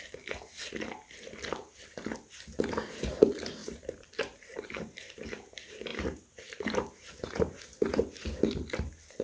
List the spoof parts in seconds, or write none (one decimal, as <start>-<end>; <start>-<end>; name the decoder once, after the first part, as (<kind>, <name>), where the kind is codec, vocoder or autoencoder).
3.6-5.3 (vocoder, BigVGAN v2); 5.9-7.6